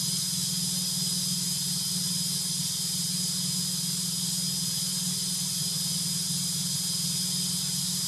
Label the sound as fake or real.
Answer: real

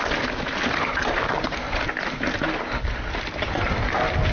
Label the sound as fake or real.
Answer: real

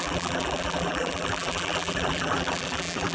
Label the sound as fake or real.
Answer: fake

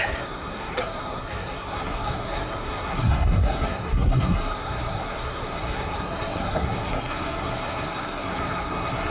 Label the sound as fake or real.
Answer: fake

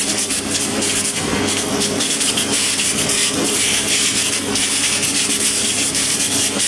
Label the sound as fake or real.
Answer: fake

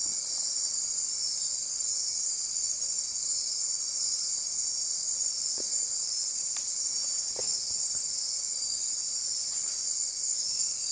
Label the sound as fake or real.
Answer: real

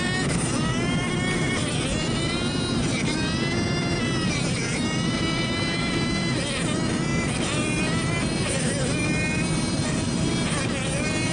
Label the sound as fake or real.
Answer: real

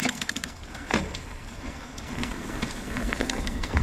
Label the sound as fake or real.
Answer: fake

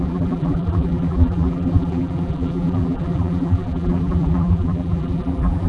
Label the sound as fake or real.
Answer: fake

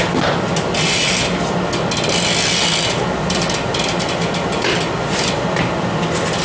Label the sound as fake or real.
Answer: real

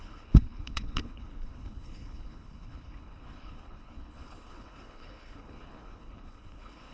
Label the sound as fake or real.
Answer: fake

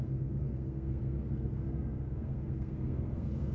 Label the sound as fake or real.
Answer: fake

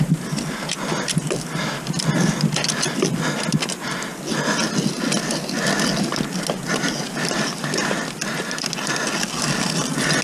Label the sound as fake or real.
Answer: real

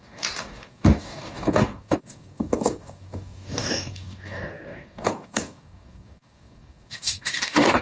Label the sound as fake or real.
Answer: fake